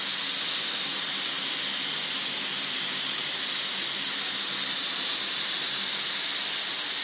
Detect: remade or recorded recorded